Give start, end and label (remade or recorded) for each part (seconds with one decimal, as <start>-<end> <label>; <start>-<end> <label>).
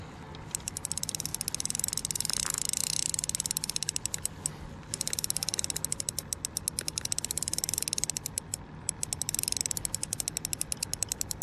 0.0-11.4 recorded